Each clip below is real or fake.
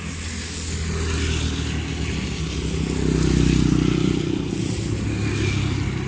real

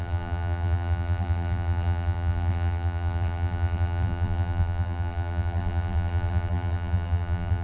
fake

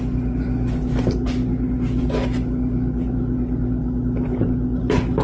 real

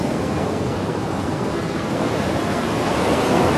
fake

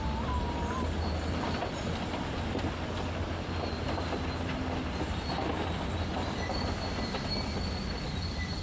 real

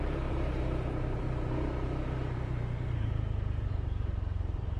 fake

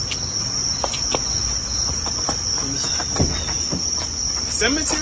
real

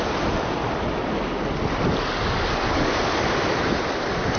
real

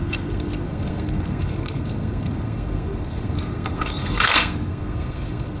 fake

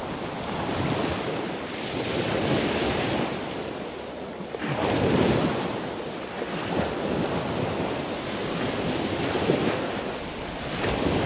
real